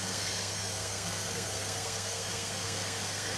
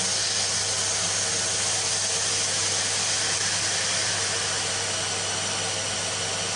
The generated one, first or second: first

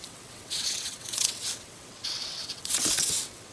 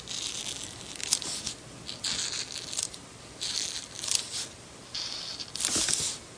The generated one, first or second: first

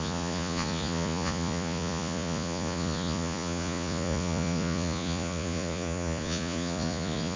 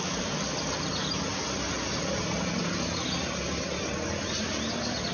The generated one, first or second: first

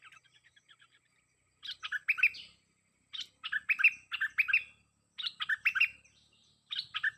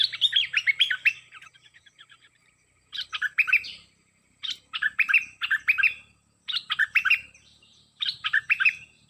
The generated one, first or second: second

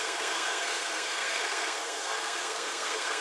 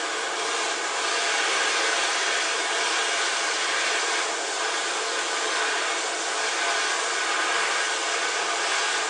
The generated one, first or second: first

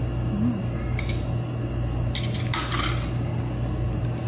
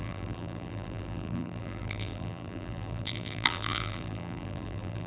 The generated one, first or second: second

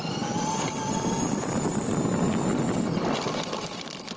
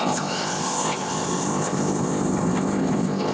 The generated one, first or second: second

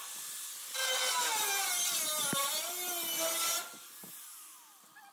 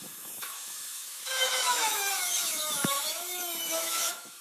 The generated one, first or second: second